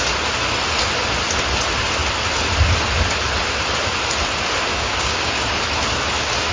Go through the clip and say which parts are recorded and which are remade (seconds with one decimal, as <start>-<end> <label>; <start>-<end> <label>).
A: 0.0-4.7 recorded; 4.7-5.3 remade; 5.3-6.5 recorded